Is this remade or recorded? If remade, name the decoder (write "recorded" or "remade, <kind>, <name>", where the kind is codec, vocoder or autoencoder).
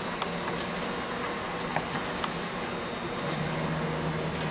recorded